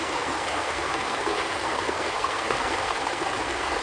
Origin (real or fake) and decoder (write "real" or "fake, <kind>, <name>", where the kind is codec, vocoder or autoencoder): fake, codec, SNAC